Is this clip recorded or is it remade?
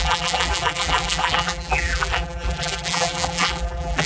remade